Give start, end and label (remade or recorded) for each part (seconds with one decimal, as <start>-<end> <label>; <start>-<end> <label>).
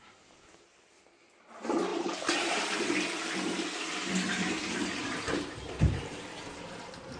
0.0-1.9 recorded; 1.9-6.2 remade; 6.2-7.2 recorded